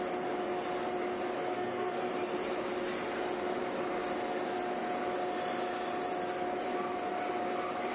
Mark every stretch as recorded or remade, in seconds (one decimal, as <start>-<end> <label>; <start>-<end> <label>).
0.0-1.5 recorded; 1.5-2.1 remade; 2.1-7.9 recorded